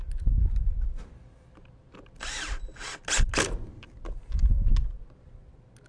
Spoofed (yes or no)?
no